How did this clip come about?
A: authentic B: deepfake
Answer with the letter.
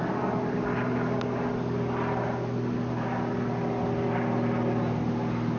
A